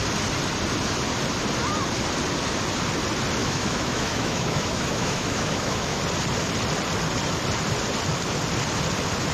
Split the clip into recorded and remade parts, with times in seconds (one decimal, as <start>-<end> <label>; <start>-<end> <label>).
0.0-3.4 recorded; 3.4-6.0 remade; 6.0-9.3 recorded